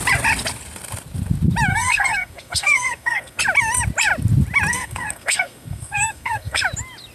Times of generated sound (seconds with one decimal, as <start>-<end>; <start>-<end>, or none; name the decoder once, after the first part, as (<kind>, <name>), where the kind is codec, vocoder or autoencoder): 1.7-3.4 (codec, SNAC); 4.7-6.6